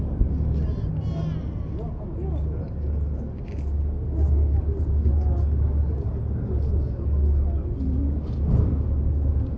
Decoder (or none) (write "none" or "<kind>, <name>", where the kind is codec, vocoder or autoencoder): none